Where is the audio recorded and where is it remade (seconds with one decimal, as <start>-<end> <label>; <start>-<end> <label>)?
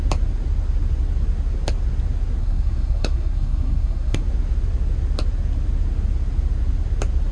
0.0-2.4 recorded; 2.4-4.2 remade; 4.2-7.3 recorded